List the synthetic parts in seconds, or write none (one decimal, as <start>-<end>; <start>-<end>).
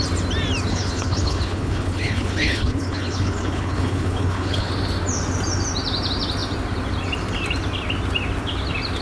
0.7-4.7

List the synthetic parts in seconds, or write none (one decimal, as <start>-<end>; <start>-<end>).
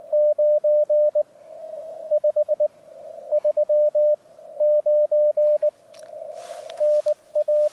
1.6-2.5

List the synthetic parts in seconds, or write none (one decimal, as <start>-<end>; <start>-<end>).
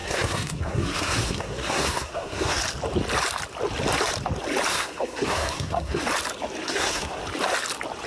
0.0-2.6; 4.7-6.0; 6.7-7.2